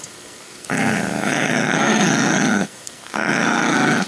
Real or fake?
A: fake